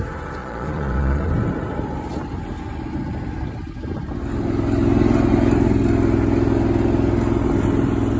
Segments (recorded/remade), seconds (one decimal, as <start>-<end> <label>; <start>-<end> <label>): 0.0-0.4 recorded; 0.4-1.3 remade; 1.3-8.2 recorded